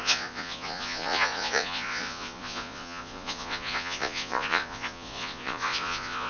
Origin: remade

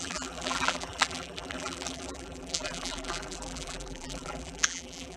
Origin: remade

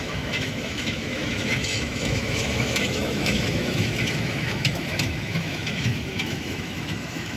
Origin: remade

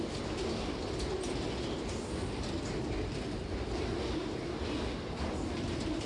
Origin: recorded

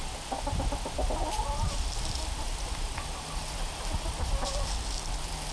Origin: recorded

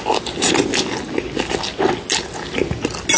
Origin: recorded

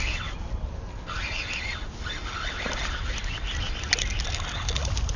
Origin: recorded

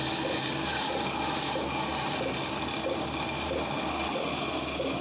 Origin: recorded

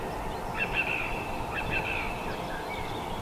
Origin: remade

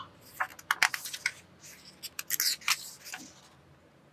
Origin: recorded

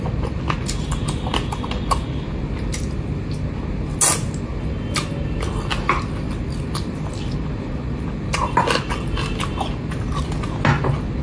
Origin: recorded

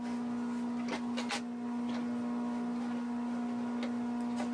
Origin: recorded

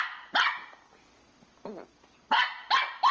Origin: recorded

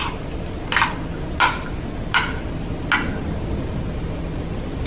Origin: recorded